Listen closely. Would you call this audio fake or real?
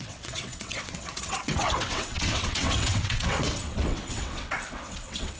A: fake